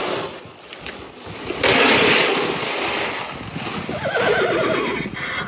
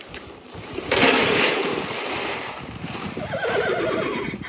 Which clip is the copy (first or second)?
second